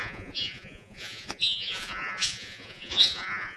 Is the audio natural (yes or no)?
no